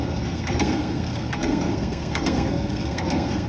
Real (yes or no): no